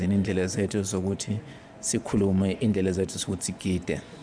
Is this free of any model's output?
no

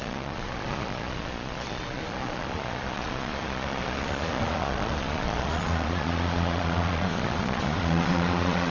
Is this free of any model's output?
no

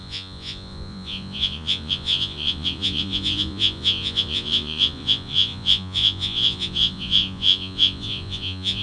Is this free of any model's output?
no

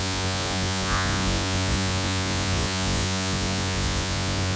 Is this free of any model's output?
no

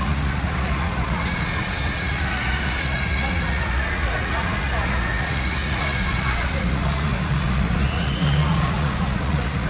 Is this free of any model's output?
no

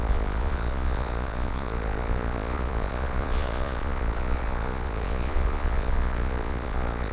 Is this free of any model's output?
no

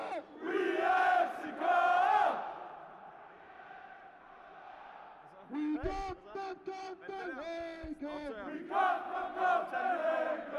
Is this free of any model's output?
yes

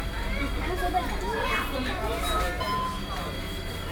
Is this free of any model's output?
yes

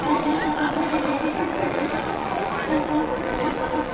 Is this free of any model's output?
no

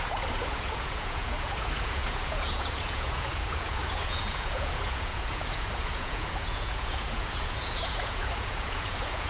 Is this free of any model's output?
no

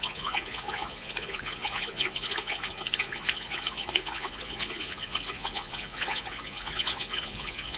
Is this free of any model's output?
no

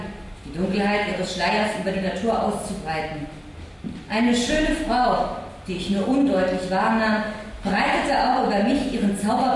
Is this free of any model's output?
yes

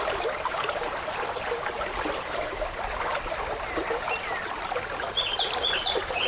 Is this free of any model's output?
yes